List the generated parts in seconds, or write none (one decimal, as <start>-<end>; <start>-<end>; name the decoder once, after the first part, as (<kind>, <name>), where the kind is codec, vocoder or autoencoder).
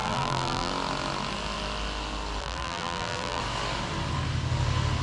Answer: 0.0-0.7 (vocoder, BigVGAN v2); 2.4-3.4